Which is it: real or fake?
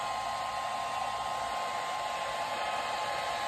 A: real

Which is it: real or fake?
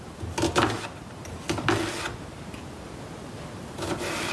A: real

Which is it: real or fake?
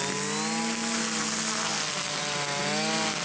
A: real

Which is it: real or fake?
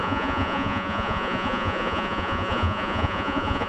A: fake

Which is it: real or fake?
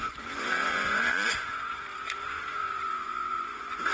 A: fake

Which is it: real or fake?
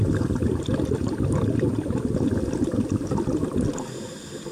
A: real